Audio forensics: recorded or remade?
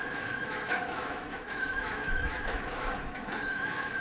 remade